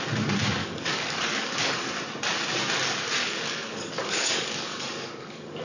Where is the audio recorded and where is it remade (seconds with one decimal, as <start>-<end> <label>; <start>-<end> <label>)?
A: 0.0-0.6 recorded; 0.6-1.9 remade; 1.9-3.2 recorded; 3.2-5.6 remade